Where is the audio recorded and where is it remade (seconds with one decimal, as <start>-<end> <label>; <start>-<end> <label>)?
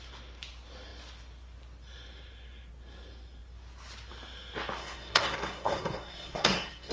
0.0-4.8 recorded; 4.8-6.9 remade